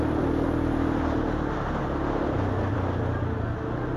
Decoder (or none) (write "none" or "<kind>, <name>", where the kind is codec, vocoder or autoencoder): none